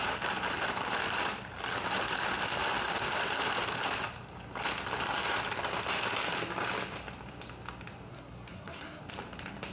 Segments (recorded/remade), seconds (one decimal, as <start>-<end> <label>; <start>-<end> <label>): 0.0-8.1 recorded; 8.1-9.0 remade; 9.0-9.7 recorded